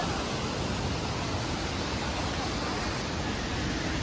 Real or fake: real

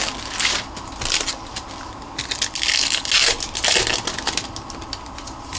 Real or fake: real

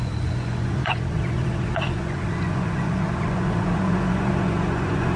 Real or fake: fake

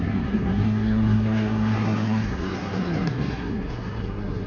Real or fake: fake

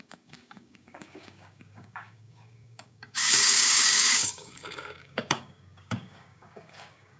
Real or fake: fake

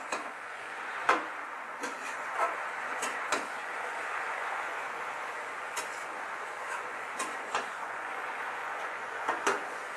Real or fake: fake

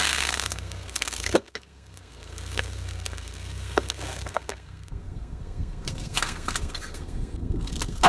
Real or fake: fake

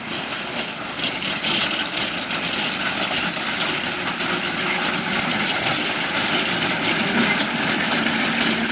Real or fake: real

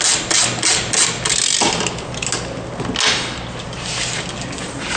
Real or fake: real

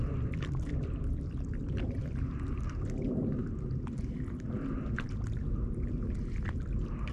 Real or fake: real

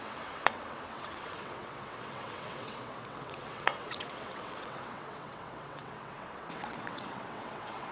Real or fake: fake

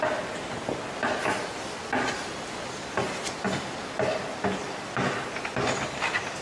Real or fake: real